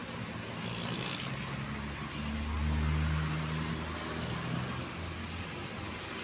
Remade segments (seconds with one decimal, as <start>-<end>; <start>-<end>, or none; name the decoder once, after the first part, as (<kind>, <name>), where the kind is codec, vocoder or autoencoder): none